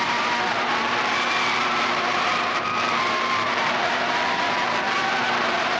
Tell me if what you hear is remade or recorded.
remade